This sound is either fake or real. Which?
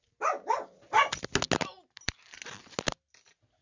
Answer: real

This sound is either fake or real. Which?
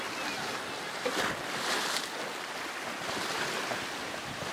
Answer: real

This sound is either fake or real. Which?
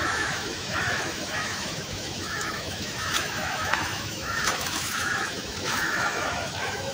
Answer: fake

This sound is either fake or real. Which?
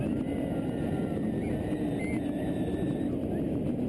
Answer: real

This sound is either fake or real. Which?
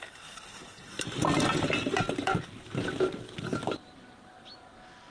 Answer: real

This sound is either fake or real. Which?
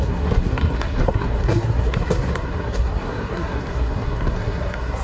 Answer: fake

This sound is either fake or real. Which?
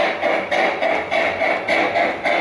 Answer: real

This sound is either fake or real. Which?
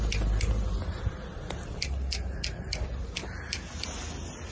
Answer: real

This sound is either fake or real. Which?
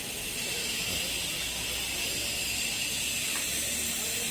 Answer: real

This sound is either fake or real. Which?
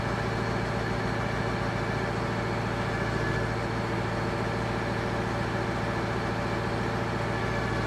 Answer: real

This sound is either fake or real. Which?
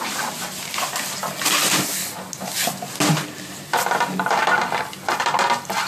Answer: real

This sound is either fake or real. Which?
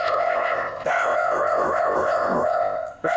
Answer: fake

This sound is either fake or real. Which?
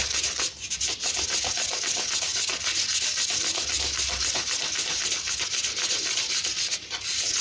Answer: real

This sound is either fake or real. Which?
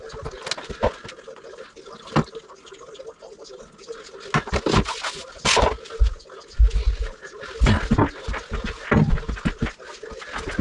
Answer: real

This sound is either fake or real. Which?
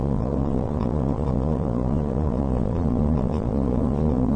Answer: fake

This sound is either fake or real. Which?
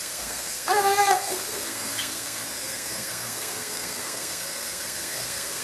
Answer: fake